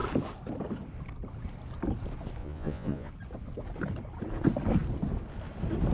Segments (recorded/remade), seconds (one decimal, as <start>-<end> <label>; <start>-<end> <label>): 0.0-2.4 recorded; 2.4-3.1 remade; 3.1-5.9 recorded